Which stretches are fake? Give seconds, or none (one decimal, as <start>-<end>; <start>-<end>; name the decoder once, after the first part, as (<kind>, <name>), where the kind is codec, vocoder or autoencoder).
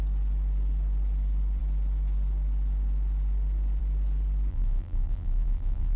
4.5-6.0 (vocoder, BigVGAN v2)